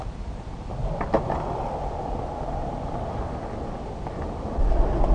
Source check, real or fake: real